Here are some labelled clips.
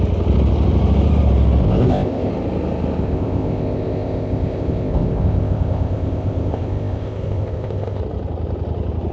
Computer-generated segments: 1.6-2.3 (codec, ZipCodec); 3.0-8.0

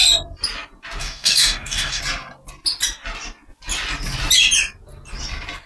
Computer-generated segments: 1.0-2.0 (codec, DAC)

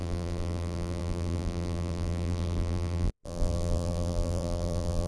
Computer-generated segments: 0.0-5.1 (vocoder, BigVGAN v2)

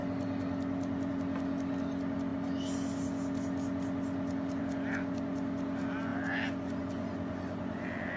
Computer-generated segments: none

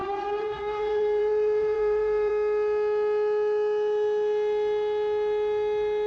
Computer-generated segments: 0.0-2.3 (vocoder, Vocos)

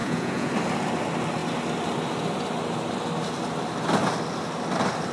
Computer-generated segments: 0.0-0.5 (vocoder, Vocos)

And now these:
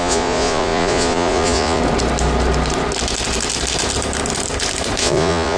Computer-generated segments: 0.0-1.8 (vocoder, Vocos); 5.0-5.6